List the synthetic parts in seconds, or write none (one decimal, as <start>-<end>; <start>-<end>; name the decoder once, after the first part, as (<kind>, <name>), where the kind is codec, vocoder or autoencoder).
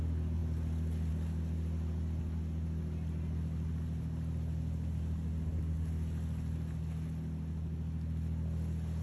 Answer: none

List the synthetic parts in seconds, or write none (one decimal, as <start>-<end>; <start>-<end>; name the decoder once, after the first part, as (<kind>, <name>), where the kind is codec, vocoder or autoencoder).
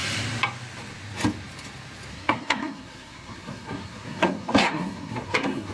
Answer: 2.1-5.7 (codec, SNAC)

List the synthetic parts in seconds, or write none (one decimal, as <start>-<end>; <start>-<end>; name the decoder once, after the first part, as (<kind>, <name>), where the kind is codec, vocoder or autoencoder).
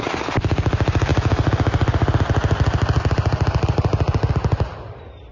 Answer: none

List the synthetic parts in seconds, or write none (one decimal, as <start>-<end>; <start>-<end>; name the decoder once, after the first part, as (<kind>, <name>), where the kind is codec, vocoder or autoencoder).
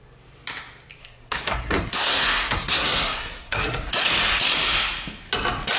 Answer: 1.0-3.9 (codec, SNAC)